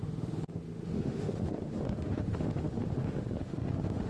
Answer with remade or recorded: remade